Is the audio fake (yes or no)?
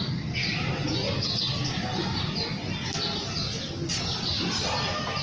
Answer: no